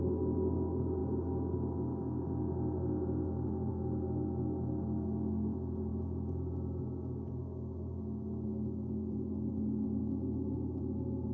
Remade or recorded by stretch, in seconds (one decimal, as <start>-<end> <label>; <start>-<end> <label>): 0.0-11.3 recorded